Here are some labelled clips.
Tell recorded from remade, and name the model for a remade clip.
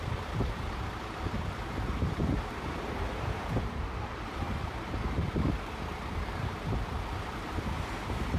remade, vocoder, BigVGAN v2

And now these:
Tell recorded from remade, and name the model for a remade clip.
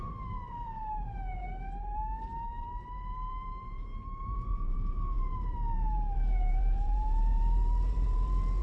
remade, vocoder, BigVGAN v2